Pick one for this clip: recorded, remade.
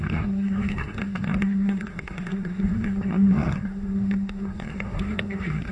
remade